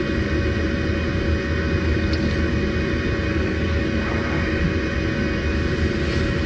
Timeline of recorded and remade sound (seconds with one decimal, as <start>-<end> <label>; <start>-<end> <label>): 0.0-3.3 recorded; 3.3-3.8 remade; 3.8-6.5 recorded